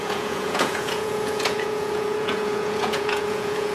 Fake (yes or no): yes